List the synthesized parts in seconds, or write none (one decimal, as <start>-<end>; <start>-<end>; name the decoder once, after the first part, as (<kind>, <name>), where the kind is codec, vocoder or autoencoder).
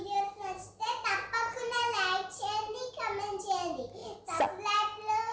none